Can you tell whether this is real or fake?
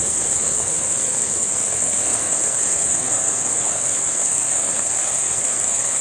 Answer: fake